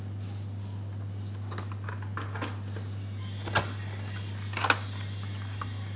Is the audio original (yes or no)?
yes